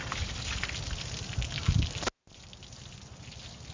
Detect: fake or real real